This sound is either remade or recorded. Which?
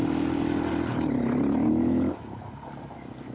recorded